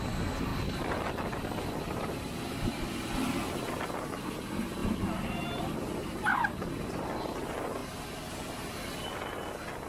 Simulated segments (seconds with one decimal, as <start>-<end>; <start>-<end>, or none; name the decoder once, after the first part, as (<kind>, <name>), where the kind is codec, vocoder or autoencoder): 0.5-4.2 (vocoder, BigVGAN v2)